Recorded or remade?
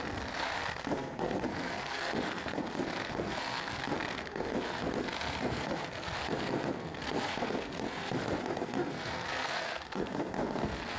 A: remade